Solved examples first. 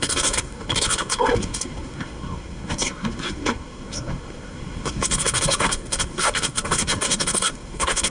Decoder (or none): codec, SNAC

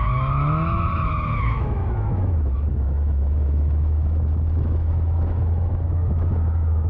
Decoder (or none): autoencoder, DAC-VAE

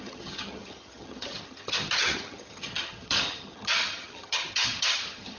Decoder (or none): vocoder, HiFi-GAN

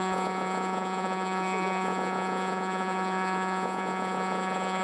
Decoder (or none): vocoder, Vocos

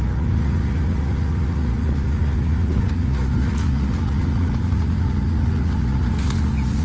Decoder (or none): vocoder, Vocos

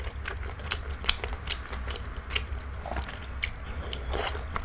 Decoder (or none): none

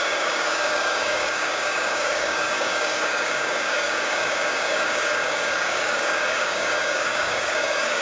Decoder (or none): codec, DAC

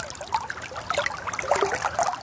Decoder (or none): none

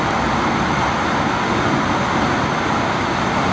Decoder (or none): none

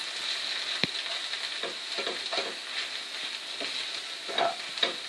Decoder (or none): none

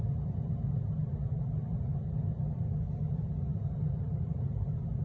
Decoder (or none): none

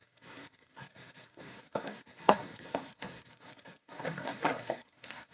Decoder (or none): codec, SNAC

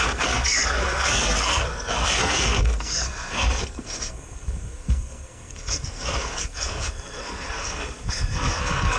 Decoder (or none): codec, SNAC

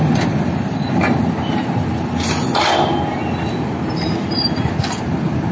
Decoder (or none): none